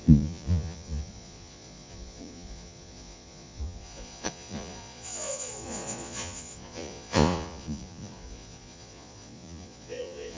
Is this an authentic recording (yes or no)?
no